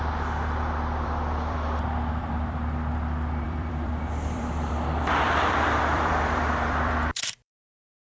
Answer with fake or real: fake